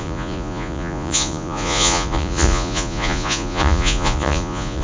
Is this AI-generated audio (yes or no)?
yes